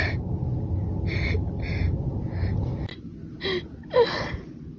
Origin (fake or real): real